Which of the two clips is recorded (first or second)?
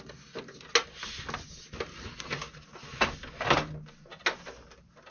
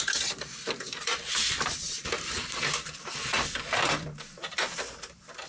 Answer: first